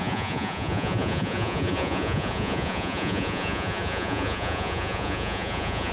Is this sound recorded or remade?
remade